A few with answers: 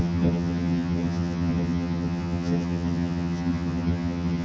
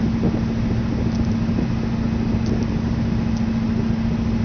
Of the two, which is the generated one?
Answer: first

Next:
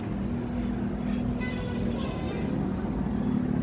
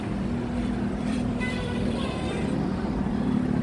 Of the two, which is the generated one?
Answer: second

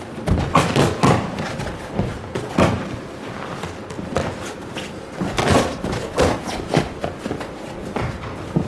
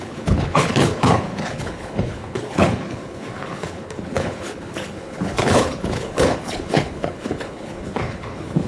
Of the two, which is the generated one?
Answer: second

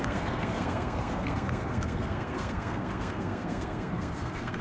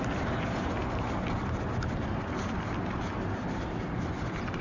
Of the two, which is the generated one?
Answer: first